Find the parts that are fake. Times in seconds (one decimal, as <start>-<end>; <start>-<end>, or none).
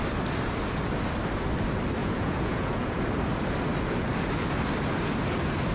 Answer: 2.0-3.0